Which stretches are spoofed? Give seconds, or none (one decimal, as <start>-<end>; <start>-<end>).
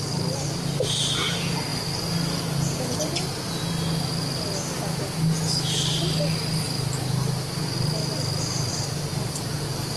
none